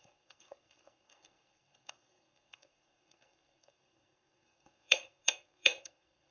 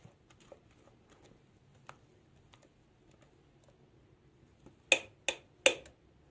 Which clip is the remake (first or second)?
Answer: first